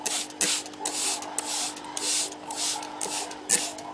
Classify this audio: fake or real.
real